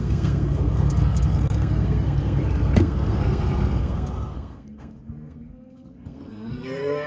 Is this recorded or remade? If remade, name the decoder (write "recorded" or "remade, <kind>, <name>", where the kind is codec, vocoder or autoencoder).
remade, codec, SNAC